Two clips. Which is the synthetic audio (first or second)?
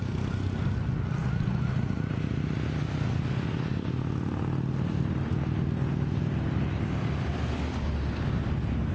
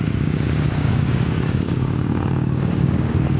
second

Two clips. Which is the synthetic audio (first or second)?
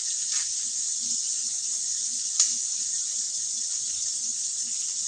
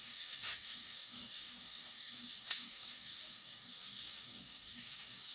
second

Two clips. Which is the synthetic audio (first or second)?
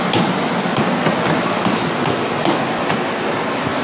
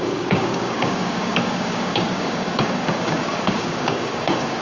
second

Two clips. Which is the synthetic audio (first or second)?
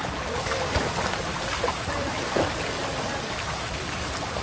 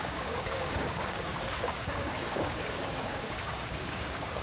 second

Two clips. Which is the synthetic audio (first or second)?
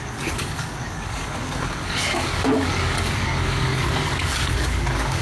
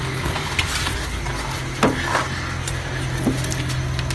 first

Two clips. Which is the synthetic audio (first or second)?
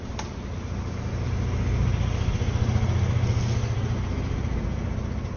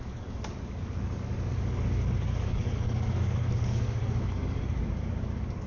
second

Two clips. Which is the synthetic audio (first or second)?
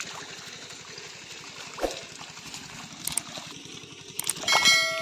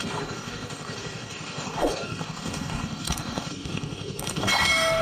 second